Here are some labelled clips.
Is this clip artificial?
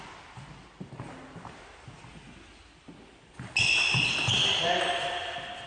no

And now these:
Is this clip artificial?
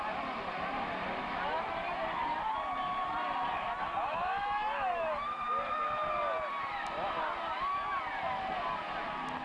no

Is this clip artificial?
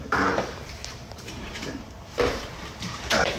yes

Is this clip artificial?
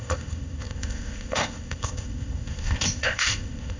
yes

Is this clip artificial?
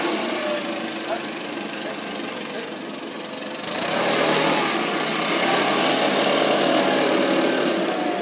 no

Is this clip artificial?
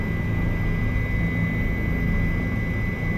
no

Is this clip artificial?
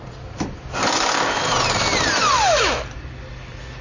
no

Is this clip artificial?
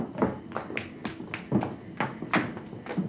no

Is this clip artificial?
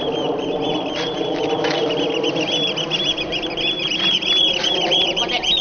no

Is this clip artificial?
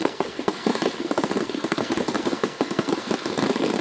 yes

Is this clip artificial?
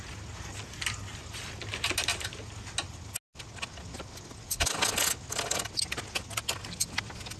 no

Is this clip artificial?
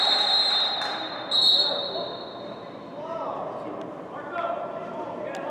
no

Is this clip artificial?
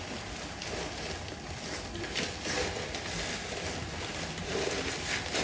no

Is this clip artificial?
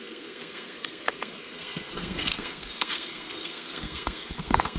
yes